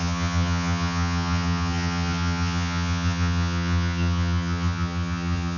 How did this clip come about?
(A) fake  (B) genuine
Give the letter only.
A